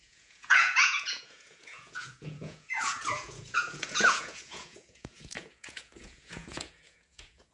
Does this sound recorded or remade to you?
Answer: remade